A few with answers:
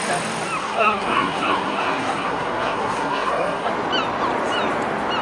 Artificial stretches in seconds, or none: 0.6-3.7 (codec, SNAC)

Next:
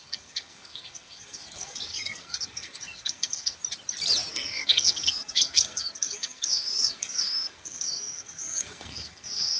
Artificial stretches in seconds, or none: 0.0-3.6 (codec, SNAC); 4.3-9.6

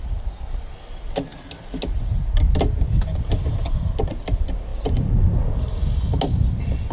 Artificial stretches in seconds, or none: none

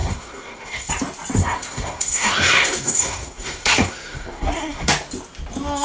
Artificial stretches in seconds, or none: 0.0-0.9 (codec, SNAC); 1.4-4.9

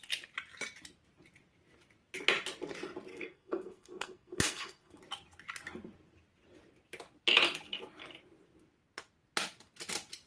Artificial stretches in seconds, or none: 3.1-5.0 (codec, SNAC)